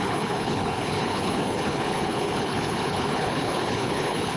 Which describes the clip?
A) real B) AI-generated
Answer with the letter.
B